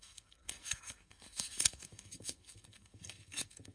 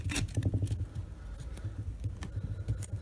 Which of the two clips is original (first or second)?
second